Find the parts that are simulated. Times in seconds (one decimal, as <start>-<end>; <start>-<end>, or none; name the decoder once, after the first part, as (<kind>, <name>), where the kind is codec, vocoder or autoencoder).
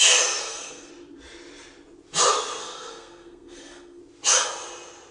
0.4-0.9 (codec, SNAC); 2.6-4.0